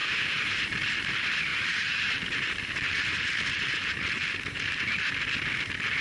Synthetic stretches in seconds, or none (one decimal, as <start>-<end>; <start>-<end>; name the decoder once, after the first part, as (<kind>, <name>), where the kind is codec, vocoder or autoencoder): 0.0-0.6 (vocoder, BigVGAN v2); 1.5-5.1